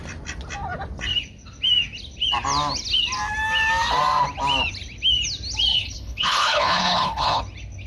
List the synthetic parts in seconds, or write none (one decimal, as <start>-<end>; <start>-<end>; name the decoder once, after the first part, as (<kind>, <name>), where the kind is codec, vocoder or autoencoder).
5.7-7.4 (codec, HILCodec)